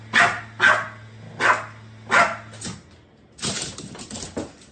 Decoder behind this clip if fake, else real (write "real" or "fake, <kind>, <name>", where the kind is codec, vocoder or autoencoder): real